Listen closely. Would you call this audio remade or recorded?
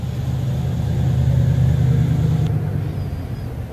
recorded